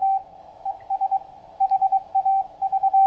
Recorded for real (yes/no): no